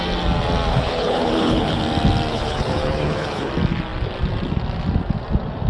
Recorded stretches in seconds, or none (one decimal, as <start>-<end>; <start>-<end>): 0.0-0.7; 1.8-2.3; 3.5-5.7